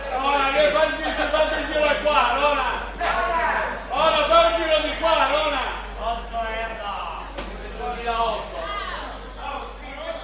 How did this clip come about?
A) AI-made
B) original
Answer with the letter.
B